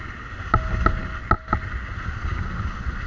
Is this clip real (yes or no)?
yes